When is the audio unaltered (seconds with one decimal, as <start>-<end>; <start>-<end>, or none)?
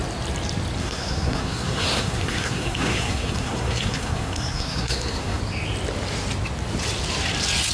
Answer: 0.0-0.8; 5.4-7.7